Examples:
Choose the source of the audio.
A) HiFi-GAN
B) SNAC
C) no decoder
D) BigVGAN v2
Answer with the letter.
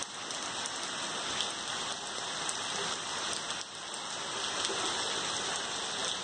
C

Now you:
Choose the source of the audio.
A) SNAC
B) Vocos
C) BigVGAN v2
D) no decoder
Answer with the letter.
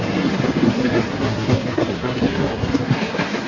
A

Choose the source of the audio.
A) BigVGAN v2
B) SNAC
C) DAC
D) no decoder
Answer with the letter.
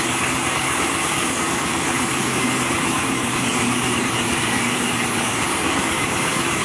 C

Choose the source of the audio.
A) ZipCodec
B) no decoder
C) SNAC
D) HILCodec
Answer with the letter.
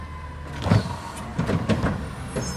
B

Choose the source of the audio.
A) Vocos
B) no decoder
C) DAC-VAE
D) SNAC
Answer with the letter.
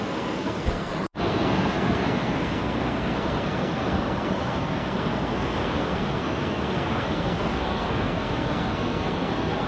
D